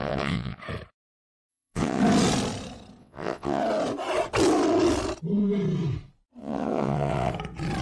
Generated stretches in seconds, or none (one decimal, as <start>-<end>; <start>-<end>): 0.0-0.6; 1.5-2.0; 3.0-3.6; 6.4-7.3